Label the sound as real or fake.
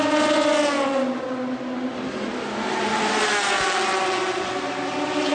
real